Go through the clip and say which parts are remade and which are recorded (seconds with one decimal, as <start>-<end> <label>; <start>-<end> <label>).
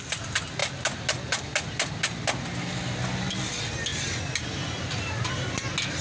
0.0-6.0 recorded